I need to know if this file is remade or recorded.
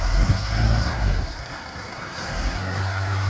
remade